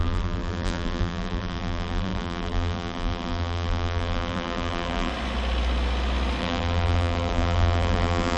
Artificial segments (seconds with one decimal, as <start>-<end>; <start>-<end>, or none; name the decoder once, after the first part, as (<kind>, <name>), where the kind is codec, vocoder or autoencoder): 0.0-5.1 (vocoder, BigVGAN v2); 6.4-8.4